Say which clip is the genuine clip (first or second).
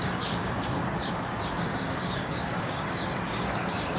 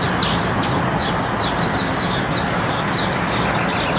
second